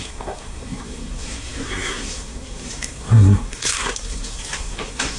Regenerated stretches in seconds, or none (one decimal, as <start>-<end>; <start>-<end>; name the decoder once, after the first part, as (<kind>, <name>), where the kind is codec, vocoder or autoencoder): 0.0-5.2 (codec, SNAC)